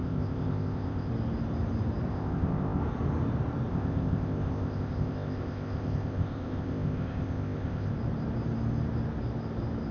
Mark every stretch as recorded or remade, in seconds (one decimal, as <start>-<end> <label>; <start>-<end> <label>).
0.0-1.1 remade; 1.1-2.1 recorded; 2.1-2.8 remade; 2.8-3.7 recorded; 3.7-7.9 remade; 7.9-9.9 recorded